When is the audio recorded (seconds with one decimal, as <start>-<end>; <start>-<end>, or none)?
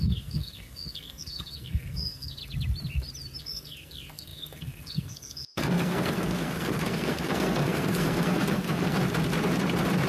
2.4-3.4; 9.0-10.1